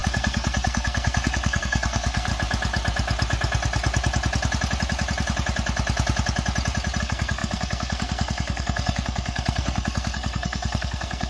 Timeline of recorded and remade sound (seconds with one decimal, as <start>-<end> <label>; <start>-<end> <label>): 0.0-2.3 remade; 2.3-7.0 recorded; 7.0-11.3 remade